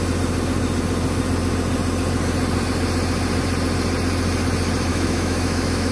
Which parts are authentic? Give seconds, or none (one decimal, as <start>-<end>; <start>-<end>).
0.0-4.9

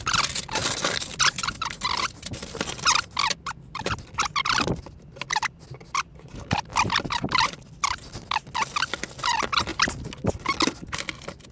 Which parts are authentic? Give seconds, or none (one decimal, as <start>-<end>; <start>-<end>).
0.0-11.5